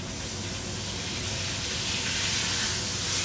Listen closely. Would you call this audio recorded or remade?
recorded